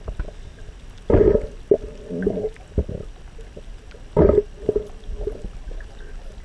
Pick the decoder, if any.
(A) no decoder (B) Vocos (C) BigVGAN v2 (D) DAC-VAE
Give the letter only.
A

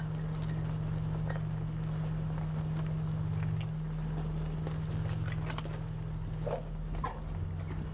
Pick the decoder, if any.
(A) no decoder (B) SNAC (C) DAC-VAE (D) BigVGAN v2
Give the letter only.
A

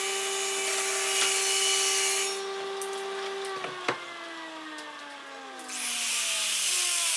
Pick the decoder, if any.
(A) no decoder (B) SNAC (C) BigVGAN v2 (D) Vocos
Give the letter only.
A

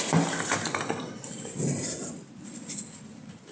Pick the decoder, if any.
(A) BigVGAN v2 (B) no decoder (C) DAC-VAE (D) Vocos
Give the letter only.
B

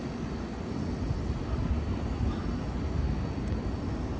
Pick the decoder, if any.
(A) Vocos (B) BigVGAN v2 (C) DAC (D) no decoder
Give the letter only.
D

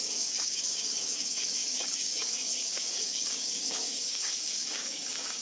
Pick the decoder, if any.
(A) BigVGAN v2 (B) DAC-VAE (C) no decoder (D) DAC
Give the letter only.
D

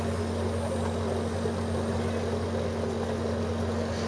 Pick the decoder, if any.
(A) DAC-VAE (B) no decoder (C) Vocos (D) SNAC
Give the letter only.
B